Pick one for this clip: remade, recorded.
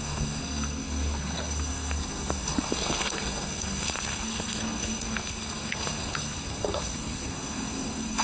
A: remade